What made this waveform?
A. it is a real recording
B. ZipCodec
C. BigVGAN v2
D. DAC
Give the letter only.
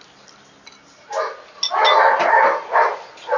A